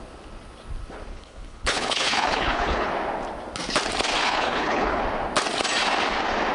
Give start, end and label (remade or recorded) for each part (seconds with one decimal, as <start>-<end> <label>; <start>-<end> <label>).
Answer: 0.0-1.1 recorded; 1.1-2.9 remade; 2.9-4.2 recorded; 4.2-5.0 remade; 5.0-6.5 recorded